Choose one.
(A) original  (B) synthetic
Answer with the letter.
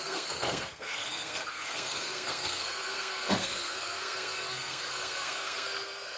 B